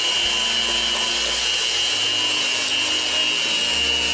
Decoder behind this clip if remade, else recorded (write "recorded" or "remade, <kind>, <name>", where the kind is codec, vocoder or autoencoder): recorded